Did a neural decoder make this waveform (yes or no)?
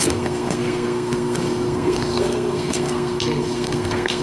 yes